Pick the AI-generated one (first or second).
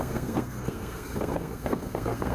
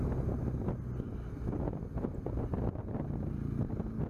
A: first